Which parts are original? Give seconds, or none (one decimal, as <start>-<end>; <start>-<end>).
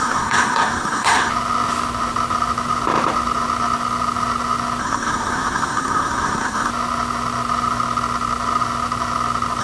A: 1.3-4.8; 6.7-9.6